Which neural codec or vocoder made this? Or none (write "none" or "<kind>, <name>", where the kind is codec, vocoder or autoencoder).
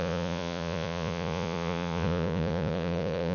vocoder, Vocos